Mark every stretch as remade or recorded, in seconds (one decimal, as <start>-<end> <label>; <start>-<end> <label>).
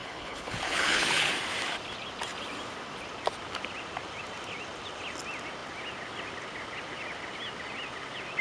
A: 0.0-1.3 remade; 1.3-8.4 recorded